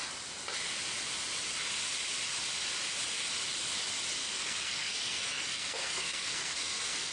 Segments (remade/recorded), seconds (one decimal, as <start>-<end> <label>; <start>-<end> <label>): 0.0-4.2 recorded; 4.2-7.1 remade